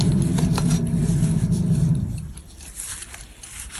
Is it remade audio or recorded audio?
recorded